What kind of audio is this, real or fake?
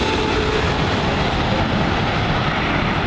real